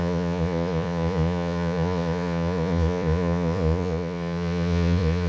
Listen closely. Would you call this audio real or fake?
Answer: fake